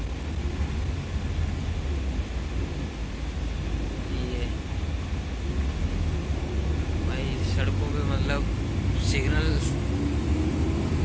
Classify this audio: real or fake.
real